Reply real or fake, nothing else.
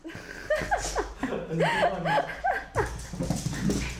real